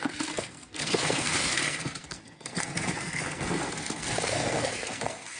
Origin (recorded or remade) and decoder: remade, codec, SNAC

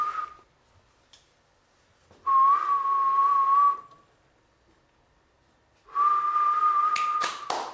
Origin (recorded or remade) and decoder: recorded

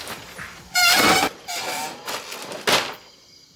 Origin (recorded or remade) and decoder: recorded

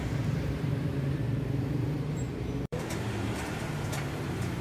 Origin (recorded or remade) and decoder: remade, vocoder, BigVGAN v2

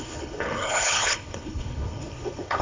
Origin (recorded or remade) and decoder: remade, codec, HILCodec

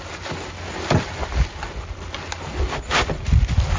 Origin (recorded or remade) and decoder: recorded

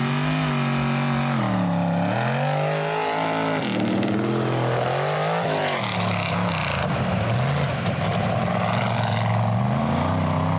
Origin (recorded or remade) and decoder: recorded